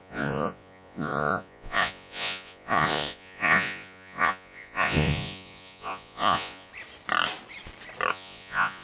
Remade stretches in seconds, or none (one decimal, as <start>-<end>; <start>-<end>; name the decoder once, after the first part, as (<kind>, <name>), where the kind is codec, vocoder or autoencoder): 0.0-6.7 (vocoder, Vocos); 8.1-8.8